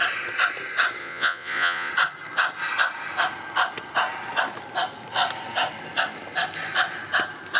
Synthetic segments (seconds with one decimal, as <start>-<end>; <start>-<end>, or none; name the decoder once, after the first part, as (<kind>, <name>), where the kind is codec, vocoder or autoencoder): 1.0-1.9 (vocoder, Vocos)